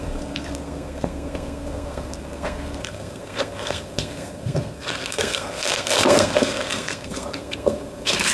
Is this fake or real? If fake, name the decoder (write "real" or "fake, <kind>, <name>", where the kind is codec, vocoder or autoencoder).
fake, codec, SNAC